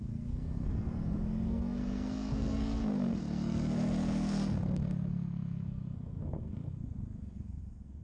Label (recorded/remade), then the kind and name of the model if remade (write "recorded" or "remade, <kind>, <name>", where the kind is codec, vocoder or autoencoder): remade, codec, SNAC